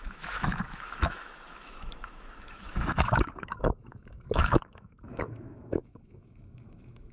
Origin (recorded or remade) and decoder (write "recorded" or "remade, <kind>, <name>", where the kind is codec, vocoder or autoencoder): remade, autoencoder, DAC-VAE